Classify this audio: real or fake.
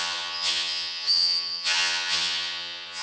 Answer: fake